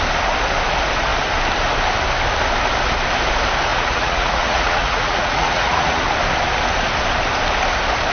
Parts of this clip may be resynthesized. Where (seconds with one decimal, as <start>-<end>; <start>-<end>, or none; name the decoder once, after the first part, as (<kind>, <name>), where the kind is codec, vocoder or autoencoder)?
3.7-6.0 (vocoder, Vocos)